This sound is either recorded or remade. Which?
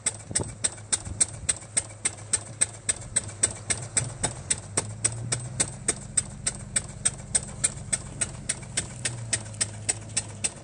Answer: recorded